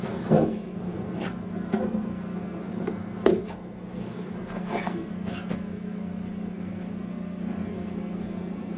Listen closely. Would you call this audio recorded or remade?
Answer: remade